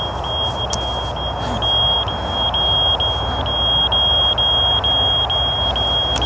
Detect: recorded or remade recorded